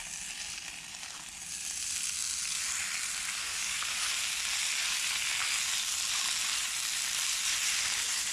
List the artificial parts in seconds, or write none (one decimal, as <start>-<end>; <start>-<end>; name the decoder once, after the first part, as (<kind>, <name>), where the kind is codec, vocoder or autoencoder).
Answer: 3.4-4.1 (codec, DAC)